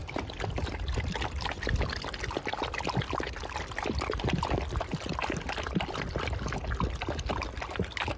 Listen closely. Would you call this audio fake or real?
real